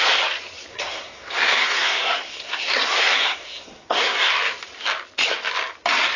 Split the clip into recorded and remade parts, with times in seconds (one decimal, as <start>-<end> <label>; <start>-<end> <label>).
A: 0.0-0.7 recorded; 0.7-4.3 remade; 4.3-6.2 recorded